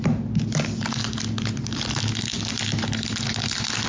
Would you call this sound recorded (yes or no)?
yes